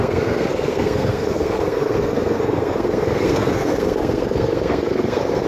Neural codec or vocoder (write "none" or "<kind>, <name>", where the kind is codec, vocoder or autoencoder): codec, SNAC